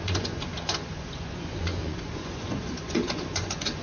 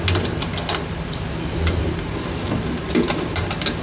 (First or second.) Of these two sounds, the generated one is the first